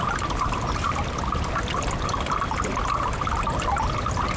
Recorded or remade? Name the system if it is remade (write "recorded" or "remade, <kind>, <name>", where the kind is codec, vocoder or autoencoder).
recorded